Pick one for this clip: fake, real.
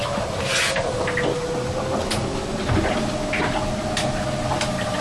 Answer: real